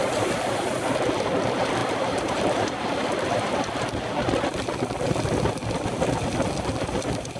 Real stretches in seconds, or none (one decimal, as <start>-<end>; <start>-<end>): 0.0-1.8; 2.4-7.4